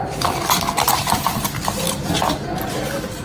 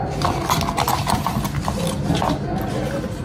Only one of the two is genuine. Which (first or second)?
second